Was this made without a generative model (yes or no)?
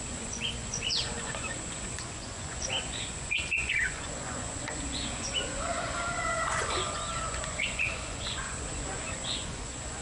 no